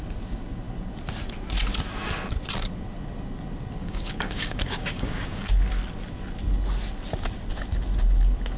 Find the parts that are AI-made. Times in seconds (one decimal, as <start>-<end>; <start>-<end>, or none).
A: 3.8-5.5